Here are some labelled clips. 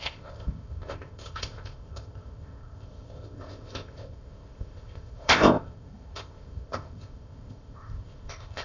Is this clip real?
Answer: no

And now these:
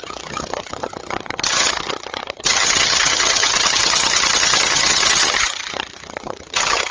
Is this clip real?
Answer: no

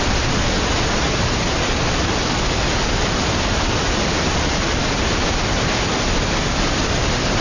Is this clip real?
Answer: no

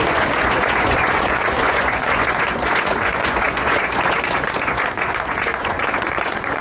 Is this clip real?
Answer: no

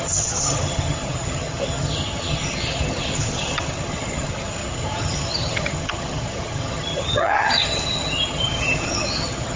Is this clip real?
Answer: no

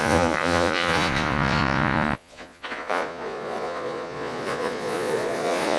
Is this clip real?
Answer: no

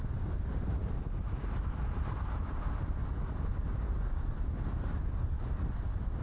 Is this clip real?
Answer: yes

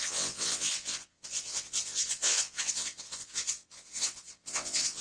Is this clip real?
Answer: no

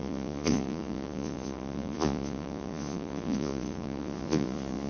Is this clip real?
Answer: no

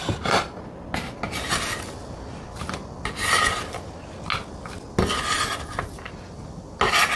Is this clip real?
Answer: yes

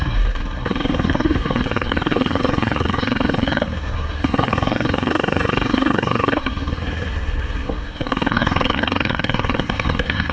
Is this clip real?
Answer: no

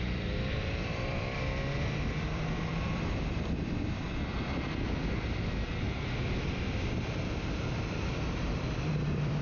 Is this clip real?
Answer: no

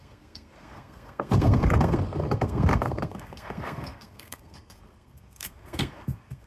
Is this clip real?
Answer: no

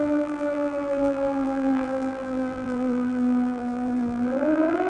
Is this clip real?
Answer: no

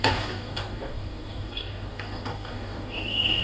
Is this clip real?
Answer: no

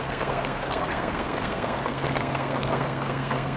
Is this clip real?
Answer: no